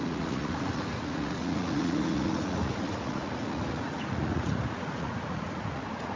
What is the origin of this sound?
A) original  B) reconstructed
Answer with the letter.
B